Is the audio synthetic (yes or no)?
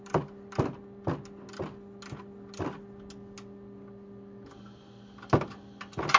no